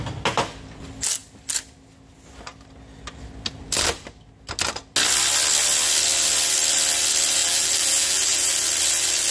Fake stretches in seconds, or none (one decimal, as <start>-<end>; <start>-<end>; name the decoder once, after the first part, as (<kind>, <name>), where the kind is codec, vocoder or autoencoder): 7.4-8.5 (vocoder, BigVGAN v2)